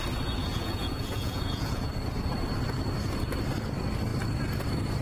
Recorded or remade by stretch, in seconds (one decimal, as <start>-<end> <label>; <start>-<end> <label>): 0.0-0.4 recorded; 0.4-1.9 remade; 1.9-5.0 recorded